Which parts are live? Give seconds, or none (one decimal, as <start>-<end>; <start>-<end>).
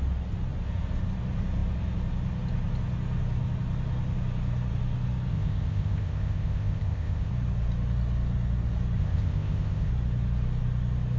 0.0-5.3; 7.3-9.0; 9.9-11.2